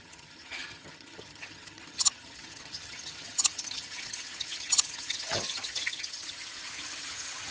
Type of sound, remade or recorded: remade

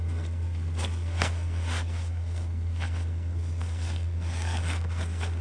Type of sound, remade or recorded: remade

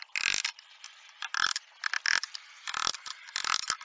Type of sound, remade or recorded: recorded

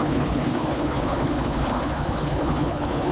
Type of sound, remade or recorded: remade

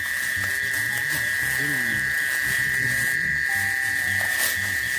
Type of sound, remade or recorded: recorded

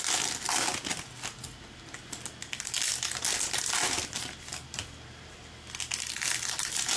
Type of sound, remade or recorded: recorded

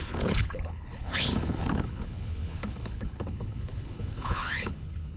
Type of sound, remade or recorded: remade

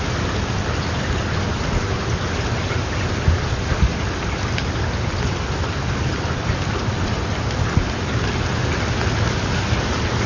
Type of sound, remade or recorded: recorded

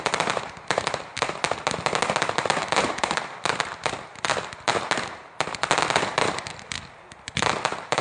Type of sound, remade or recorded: recorded